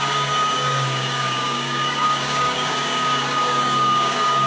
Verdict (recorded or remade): remade